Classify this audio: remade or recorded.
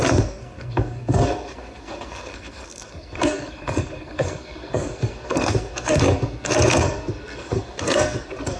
remade